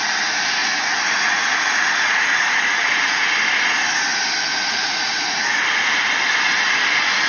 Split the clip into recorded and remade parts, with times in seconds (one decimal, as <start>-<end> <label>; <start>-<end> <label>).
0.0-0.6 recorded; 0.6-3.3 remade; 3.3-4.5 recorded; 4.5-5.4 remade; 5.4-7.3 recorded